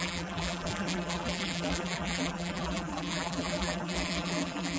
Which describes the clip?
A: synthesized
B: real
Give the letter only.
A